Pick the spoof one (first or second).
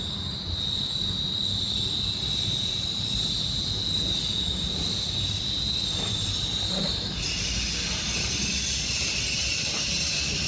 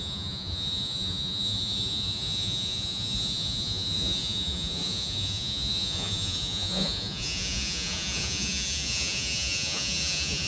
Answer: second